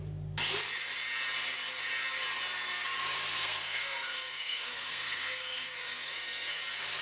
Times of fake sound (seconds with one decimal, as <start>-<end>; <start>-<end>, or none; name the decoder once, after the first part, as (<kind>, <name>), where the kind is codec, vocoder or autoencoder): 3.3-6.6 (codec, SNAC)